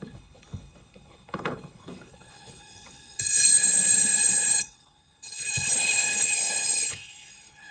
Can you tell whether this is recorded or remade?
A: remade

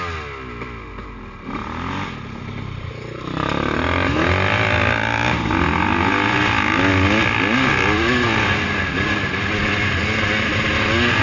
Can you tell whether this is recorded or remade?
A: recorded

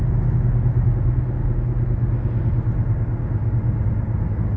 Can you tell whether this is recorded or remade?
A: recorded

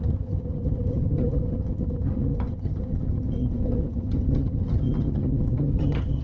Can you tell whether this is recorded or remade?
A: remade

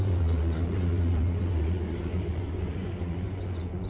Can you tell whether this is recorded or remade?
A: remade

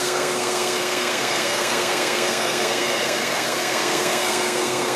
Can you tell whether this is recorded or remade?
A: remade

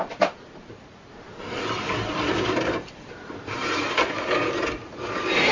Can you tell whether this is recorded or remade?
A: remade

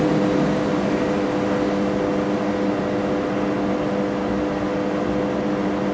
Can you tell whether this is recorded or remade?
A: recorded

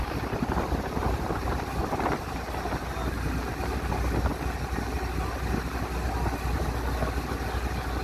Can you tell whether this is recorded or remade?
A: recorded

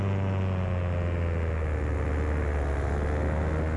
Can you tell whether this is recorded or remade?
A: recorded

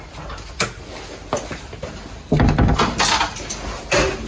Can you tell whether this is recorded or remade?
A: recorded